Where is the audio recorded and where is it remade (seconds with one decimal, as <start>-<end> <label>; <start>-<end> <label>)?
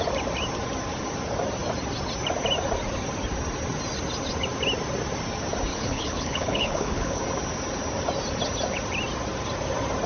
0.0-5.7 recorded; 5.7-7.2 remade; 7.2-10.1 recorded